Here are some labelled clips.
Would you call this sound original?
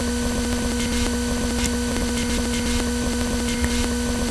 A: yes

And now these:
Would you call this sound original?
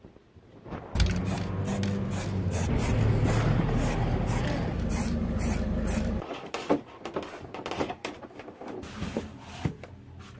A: yes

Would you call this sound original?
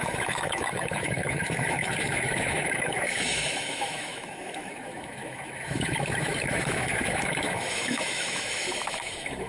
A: no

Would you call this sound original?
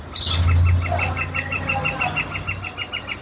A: yes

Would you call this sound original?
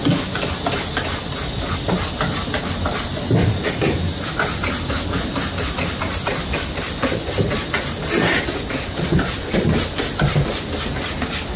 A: yes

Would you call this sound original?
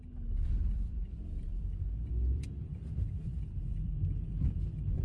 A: no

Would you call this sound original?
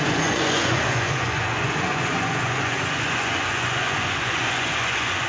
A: no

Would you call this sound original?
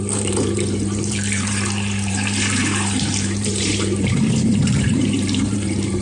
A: no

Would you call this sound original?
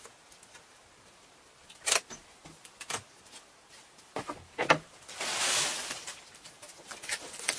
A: yes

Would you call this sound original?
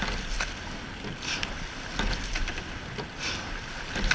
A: yes